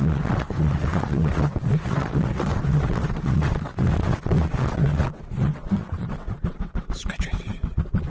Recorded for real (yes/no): no